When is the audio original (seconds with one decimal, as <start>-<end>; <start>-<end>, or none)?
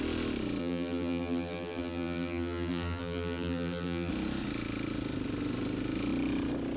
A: 0.0-0.6; 4.1-6.8